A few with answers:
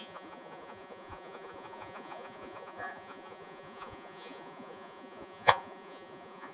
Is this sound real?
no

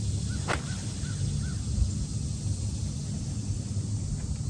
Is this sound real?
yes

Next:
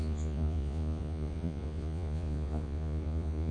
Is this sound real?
no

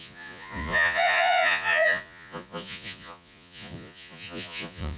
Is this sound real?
no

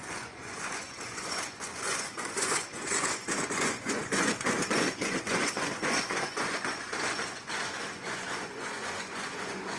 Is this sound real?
no